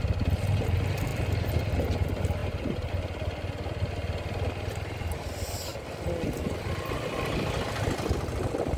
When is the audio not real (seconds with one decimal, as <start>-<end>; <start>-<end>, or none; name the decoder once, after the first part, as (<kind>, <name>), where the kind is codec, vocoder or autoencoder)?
2.4-2.9 (vocoder, BigVGAN v2)